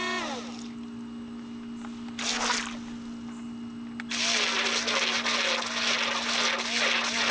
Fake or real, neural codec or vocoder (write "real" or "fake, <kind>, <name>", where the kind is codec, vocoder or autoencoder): real